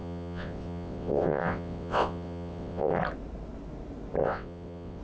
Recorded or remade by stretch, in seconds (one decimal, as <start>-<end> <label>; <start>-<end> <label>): 0.0-3.0 remade; 3.0-4.2 recorded; 4.2-5.0 remade